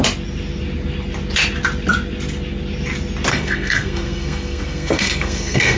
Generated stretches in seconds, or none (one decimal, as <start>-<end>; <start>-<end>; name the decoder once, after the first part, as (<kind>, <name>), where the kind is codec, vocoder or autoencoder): 3.3-5.8 (codec, SNAC)